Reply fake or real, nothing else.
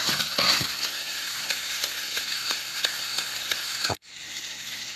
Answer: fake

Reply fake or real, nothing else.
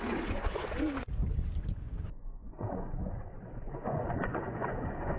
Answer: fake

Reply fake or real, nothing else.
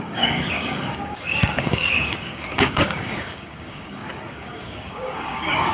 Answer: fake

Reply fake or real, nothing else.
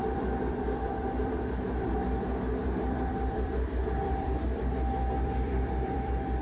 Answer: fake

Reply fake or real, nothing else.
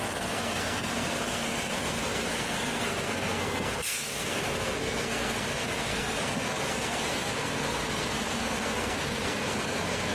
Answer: fake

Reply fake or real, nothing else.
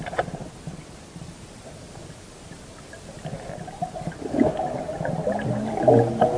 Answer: real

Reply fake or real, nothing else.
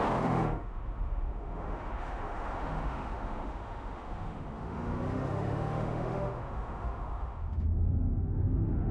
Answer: fake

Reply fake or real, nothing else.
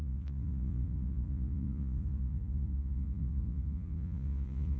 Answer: fake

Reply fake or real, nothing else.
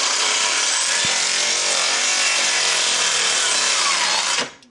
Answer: real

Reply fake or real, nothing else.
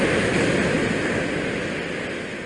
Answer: real